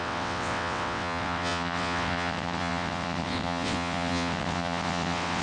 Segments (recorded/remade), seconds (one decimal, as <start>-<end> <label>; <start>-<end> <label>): 0.0-5.4 remade